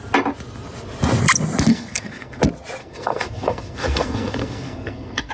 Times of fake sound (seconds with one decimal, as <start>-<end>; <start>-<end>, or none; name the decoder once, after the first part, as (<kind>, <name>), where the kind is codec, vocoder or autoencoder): 1.7-2.4 (codec, SNAC); 2.8-5.3